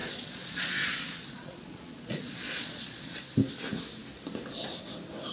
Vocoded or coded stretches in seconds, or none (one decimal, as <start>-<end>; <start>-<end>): 0.0-3.2